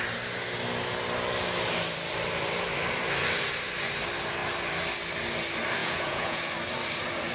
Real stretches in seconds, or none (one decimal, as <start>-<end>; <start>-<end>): 0.0-5.8; 6.4-7.3